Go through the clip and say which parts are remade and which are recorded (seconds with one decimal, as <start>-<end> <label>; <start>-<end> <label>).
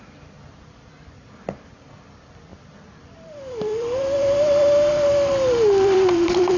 0.0-6.6 remade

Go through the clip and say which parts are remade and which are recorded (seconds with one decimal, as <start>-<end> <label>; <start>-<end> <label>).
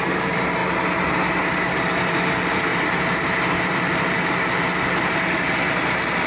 0.0-0.6 remade; 0.6-1.7 recorded; 1.7-6.3 remade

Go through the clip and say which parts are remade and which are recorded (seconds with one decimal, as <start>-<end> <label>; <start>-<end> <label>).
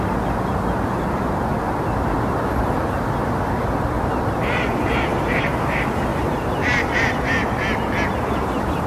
0.0-5.1 recorded; 5.1-5.6 remade; 5.6-6.1 recorded; 6.1-6.9 remade; 6.9-8.9 recorded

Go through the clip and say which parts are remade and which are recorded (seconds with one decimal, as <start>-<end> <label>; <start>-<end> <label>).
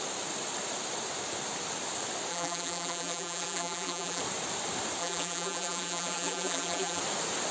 0.0-2.3 recorded; 2.3-4.2 remade; 4.2-5.0 recorded; 5.0-7.0 remade; 7.0-7.5 recorded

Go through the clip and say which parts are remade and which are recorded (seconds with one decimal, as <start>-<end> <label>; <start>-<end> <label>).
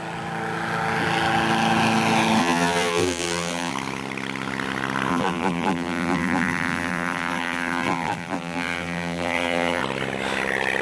0.0-2.4 recorded; 2.4-3.7 remade; 3.7-5.1 recorded; 5.1-9.8 remade; 9.8-10.8 recorded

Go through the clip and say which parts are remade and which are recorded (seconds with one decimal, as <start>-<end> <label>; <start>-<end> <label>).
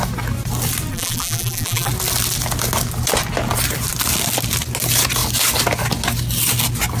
0.0-0.9 recorded; 0.9-1.9 remade; 1.9-7.0 recorded